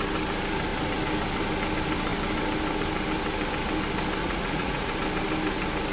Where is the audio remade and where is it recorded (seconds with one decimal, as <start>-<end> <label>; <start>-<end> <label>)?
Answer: 0.0-4.2 recorded; 4.2-4.9 remade; 4.9-5.9 recorded